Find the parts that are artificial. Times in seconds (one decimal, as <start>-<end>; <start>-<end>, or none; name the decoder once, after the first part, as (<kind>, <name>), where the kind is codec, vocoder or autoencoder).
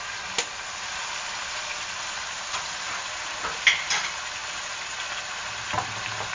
4.4-5.2 (vocoder, BigVGAN v2)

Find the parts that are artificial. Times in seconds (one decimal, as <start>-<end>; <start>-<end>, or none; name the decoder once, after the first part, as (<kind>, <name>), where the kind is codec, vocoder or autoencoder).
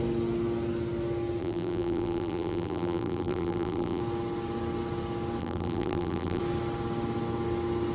1.4-4.0 (vocoder, BigVGAN v2); 5.4-6.4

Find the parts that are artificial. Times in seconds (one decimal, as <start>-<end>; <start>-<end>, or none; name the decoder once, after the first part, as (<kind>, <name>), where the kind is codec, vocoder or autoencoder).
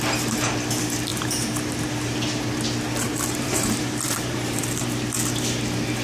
1.1-1.8 (vocoder, BigVGAN v2); 3.0-4.6